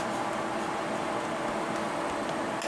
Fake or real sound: real